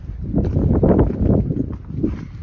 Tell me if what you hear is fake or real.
real